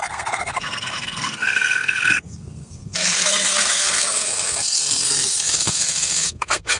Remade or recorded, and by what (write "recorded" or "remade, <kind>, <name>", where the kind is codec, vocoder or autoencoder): remade, codec, SNAC